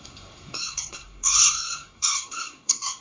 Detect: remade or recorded remade